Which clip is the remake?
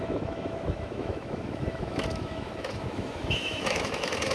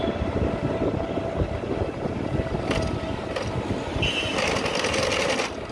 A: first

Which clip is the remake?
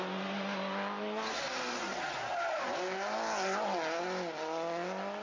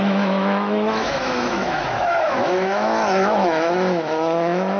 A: second